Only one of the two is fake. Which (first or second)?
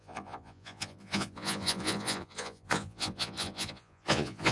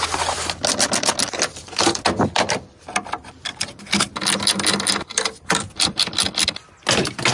first